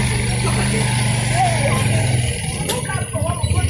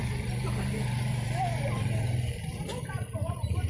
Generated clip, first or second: second